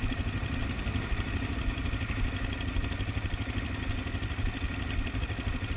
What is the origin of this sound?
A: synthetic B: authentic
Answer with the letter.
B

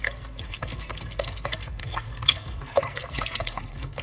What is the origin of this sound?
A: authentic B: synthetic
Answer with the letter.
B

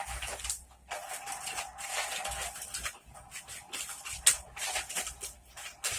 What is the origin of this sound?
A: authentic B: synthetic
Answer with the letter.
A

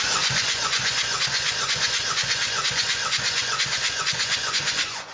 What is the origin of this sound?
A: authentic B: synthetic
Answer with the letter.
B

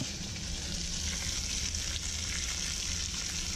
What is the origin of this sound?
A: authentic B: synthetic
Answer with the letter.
A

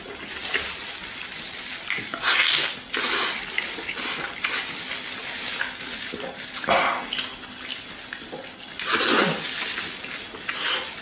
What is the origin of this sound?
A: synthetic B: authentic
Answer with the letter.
B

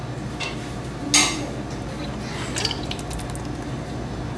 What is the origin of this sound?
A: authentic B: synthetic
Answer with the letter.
A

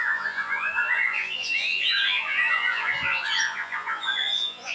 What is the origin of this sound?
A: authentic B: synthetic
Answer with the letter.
B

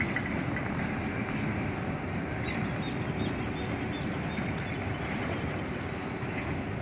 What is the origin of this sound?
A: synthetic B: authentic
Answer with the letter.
B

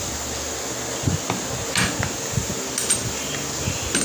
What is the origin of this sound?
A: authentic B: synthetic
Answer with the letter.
A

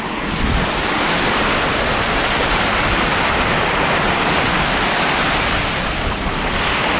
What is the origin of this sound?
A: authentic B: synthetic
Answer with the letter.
A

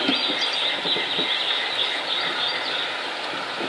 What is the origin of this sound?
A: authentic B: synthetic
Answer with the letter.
A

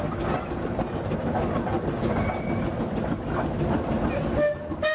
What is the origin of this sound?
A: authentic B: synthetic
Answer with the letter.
A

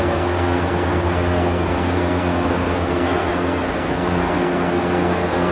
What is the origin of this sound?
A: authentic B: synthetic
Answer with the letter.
B